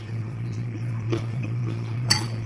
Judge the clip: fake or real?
fake